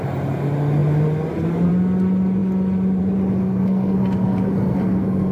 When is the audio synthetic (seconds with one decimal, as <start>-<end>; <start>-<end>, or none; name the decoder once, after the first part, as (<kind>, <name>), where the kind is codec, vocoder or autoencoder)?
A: 3.4-5.3 (codec, SNAC)